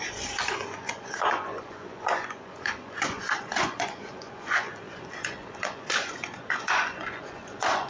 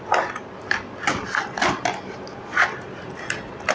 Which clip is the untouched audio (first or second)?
second